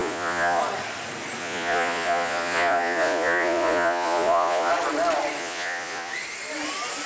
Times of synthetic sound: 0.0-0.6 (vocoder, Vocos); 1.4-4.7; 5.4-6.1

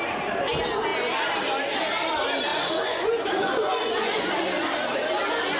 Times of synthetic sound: 2.5-4.4 (vocoder, Vocos)

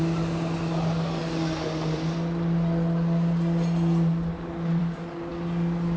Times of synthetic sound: none

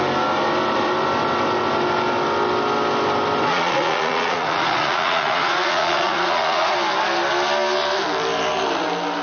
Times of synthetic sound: 3.5-6.7 (vocoder, Vocos)

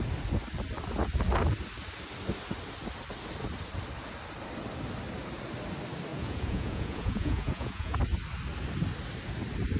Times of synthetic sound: 6.1-8.0 (vocoder, Vocos)

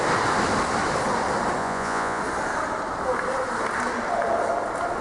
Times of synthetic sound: 1.6-2.2 (vocoder, Vocos)